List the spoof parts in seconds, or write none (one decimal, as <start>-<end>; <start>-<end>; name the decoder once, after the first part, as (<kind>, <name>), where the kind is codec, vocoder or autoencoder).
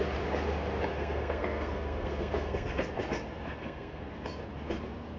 0.9-2.9 (codec, SNAC); 3.5-4.1